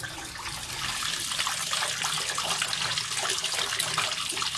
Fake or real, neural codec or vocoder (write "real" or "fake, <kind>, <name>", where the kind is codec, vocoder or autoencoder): real